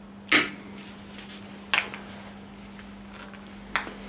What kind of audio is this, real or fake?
real